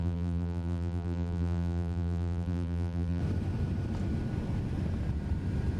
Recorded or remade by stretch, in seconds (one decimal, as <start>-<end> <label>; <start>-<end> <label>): 0.0-3.2 remade; 3.2-5.8 recorded